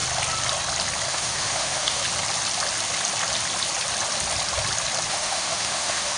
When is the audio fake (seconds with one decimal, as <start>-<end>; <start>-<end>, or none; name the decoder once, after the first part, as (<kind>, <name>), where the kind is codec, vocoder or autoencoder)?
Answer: 1.1-2.0 (autoencoder, DAC-VAE); 5.1-6.2